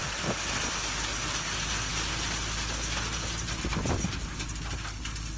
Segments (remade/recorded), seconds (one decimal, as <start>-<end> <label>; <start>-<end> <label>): 0.0-5.4 recorded

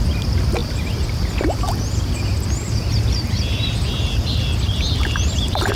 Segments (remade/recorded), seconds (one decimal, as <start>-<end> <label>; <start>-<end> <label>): 0.0-0.6 recorded; 0.6-1.8 remade; 1.8-5.8 recorded